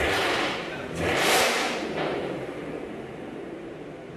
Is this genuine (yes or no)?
no